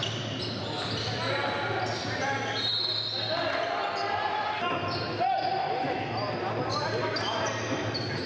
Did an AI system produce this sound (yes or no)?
no